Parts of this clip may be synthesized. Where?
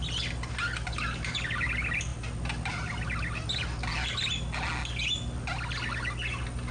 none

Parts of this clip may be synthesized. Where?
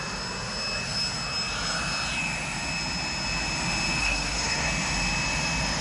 4.0-4.7 (codec, SNAC)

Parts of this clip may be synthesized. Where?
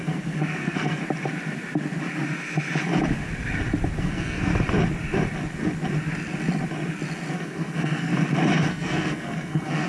0.0-1.0 (codec, SNAC); 4.0-4.5; 7.3-8.1; 8.7-9.9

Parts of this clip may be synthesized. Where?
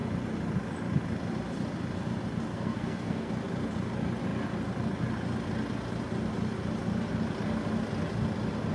2.5-3.3 (codec, SNAC)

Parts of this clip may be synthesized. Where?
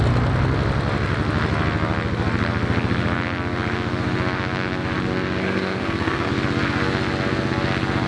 5.4-6.3 (codec, SNAC)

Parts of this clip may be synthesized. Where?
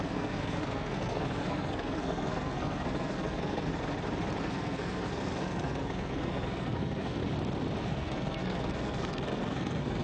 0.0-3.7 (codec, SNAC); 4.4-7.2; 7.8-10.0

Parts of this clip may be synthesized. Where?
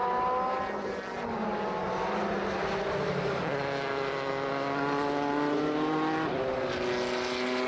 none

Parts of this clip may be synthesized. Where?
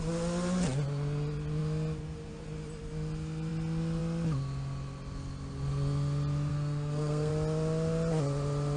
6.5-7.3 (codec, SNAC)